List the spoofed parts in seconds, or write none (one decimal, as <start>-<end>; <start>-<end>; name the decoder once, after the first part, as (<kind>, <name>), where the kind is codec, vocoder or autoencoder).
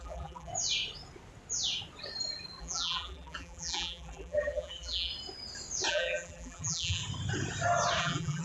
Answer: 0.0-0.5 (vocoder, BigVGAN v2); 2.6-5.1; 5.9-7.0; 8.0-8.4